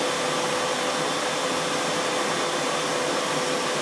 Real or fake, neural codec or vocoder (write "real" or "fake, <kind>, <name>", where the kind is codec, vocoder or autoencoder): real